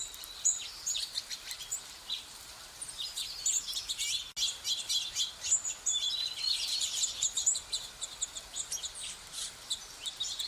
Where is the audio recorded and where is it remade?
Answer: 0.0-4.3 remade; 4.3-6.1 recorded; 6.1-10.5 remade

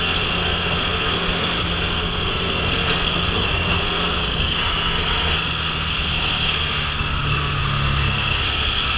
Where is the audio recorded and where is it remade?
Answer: 0.0-9.0 remade